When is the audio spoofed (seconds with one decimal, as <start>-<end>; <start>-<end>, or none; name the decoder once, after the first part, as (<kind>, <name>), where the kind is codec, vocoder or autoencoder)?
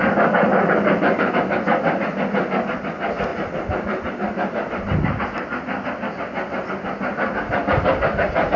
0.5-1.3 (vocoder, BigVGAN v2); 3.3-5.2